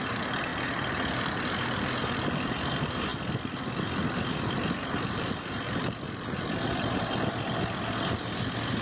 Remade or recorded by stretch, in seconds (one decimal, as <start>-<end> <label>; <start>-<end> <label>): 0.0-8.8 recorded